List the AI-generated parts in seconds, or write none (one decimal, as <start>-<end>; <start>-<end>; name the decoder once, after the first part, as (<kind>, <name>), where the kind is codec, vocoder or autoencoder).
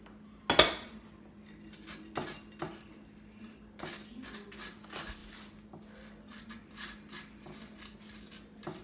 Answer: none